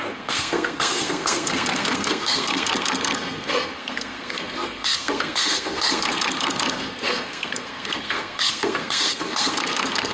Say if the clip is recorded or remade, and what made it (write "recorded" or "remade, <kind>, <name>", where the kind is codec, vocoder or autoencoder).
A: remade, codec, SNAC